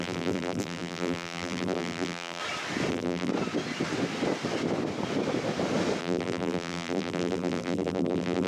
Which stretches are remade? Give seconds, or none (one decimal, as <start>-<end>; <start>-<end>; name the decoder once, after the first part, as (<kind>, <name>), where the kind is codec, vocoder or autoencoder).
0.0-2.4 (vocoder, BigVGAN v2); 2.9-3.3; 6.0-8.5